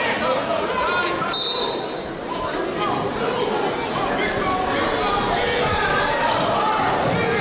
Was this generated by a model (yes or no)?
no